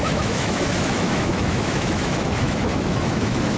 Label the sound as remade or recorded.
remade